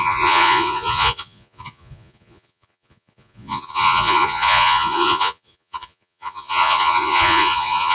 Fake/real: fake